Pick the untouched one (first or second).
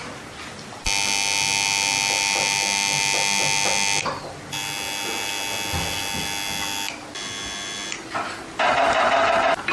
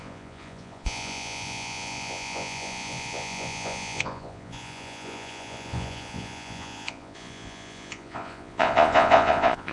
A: first